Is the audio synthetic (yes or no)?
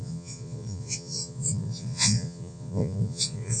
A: yes